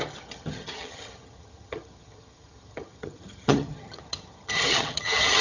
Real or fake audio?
fake